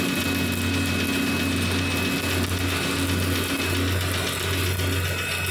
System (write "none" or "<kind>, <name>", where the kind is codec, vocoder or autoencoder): none